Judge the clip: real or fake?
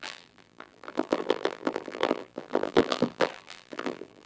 fake